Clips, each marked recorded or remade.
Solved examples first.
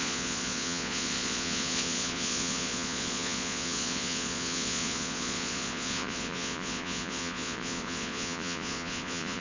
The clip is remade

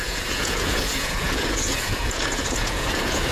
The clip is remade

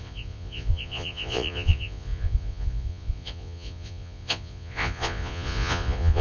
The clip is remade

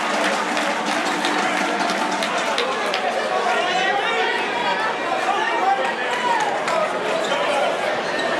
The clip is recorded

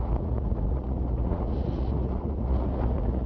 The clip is remade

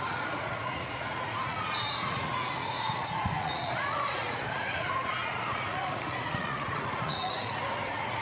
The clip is remade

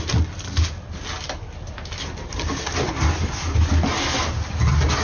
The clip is recorded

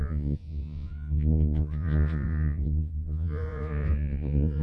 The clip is remade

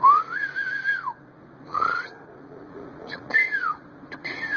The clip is remade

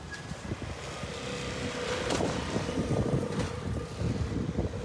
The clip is recorded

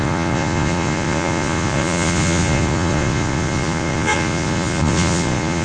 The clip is remade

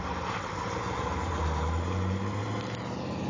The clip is recorded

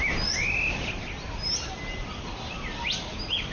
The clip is recorded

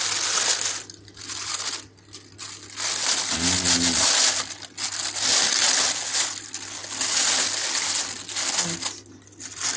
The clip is recorded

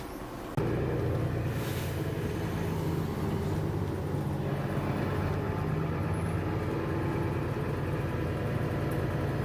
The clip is recorded